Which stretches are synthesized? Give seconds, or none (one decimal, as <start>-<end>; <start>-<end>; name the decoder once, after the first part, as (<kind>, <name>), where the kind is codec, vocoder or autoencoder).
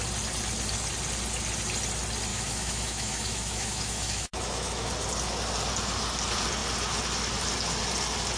2.3-4.9 (autoencoder, DAC-VAE)